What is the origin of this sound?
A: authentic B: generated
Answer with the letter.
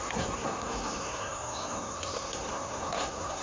B